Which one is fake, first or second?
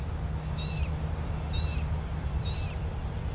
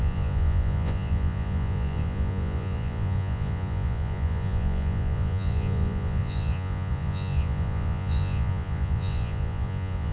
second